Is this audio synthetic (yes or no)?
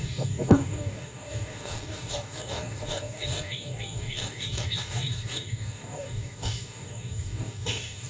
yes